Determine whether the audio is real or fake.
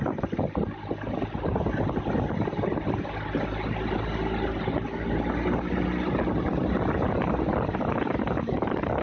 real